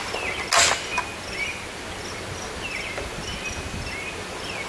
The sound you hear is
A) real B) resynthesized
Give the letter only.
A